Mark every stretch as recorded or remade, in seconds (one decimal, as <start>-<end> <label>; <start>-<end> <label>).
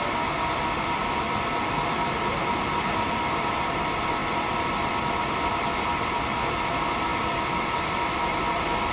0.0-8.9 recorded